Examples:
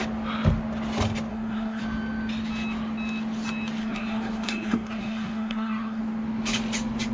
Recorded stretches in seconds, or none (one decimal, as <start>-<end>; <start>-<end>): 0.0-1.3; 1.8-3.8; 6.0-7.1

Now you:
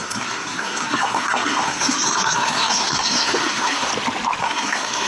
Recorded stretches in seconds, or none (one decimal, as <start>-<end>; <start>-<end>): 3.9-4.4

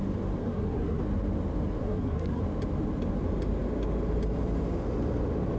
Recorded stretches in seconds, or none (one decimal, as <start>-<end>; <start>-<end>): 0.0-0.4; 1.0-1.8; 2.4-5.6